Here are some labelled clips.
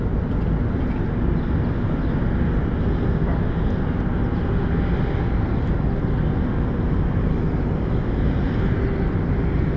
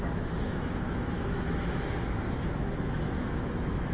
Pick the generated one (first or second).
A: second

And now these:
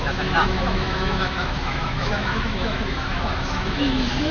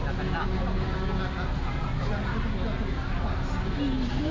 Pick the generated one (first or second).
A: first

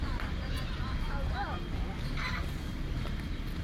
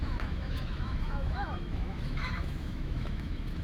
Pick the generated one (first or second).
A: second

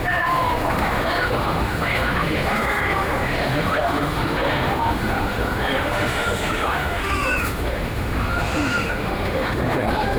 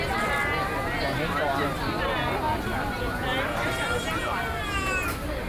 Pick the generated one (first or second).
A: first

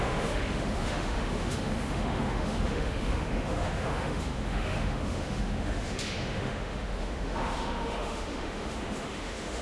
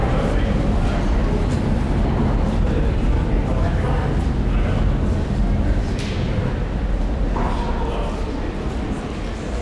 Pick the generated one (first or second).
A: first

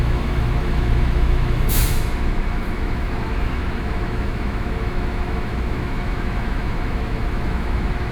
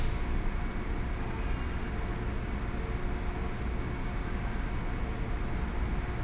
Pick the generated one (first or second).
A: first